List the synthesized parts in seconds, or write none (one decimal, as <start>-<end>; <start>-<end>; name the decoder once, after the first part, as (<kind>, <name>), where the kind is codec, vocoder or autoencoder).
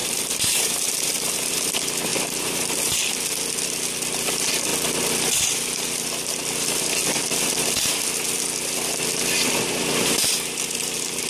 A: 0.0-1.7 (vocoder, BigVGAN v2); 2.1-3.0